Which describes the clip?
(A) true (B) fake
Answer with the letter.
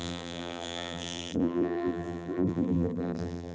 B